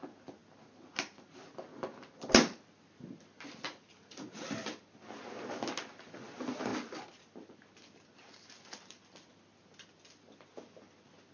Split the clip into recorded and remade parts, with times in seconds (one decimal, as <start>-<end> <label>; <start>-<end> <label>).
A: 0.0-11.3 recorded